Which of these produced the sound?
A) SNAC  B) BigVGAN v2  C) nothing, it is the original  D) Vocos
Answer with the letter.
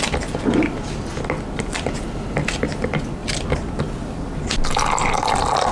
C